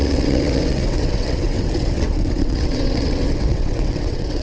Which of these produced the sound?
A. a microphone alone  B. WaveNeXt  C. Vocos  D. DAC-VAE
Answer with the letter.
B